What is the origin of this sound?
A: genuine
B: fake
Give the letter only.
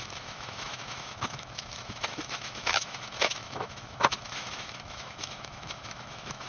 B